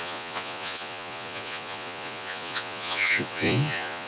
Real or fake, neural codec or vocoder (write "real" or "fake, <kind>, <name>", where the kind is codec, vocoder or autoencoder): fake, vocoder, Vocos